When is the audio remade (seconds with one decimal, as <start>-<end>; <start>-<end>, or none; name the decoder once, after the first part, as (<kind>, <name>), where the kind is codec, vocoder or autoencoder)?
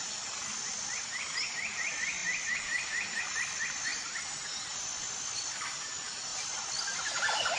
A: none